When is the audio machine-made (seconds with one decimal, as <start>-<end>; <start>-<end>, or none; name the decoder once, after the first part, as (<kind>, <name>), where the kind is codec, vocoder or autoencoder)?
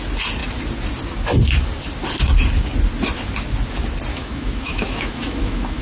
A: 4.1-5.8 (autoencoder, DAC-VAE)